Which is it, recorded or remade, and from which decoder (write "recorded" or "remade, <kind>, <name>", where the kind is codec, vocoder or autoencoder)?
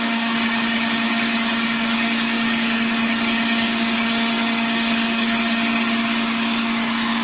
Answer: remade, codec, DAC